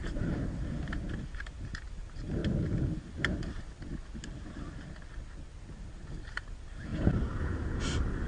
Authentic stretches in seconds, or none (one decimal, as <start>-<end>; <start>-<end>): 2.4-5.6